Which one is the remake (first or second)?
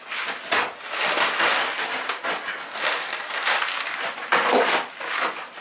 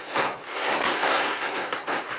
second